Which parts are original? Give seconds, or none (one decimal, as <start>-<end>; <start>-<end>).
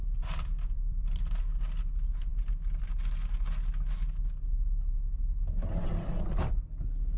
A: 1.6-7.2